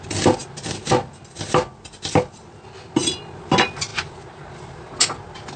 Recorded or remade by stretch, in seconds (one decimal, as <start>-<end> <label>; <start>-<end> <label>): 0.0-5.6 recorded

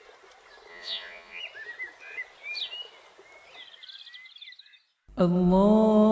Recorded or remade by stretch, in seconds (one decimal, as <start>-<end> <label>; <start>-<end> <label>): 0.0-0.7 recorded; 0.7-1.4 remade; 1.4-6.1 recorded

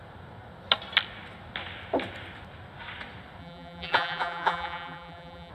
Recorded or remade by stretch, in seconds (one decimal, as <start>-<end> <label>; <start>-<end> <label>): 0.0-3.4 recorded; 3.4-5.5 remade

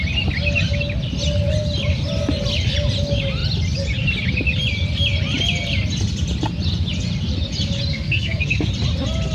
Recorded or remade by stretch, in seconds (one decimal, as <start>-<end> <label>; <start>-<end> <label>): 0.0-7.9 recorded; 7.9-8.7 remade; 8.7-9.3 recorded

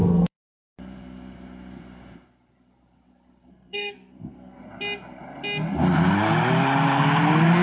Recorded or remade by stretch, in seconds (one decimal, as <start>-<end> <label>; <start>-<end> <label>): 0.0-0.7 remade; 0.7-3.5 recorded; 3.5-4.6 remade; 4.6-7.6 recorded

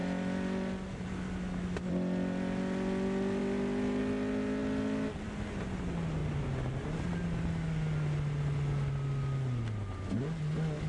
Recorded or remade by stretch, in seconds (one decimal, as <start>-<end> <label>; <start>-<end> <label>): 0.0-10.9 recorded

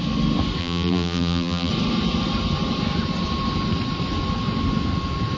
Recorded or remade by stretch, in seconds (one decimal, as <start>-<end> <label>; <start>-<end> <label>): 0.0-0.6 recorded; 0.6-1.7 remade; 1.7-5.4 recorded

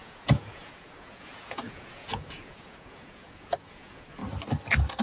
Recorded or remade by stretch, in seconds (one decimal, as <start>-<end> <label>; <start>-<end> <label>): 0.0-4.2 remade; 4.2-5.0 recorded